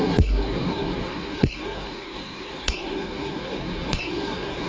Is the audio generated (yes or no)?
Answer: yes